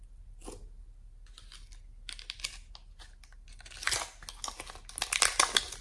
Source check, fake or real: real